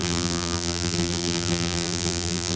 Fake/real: fake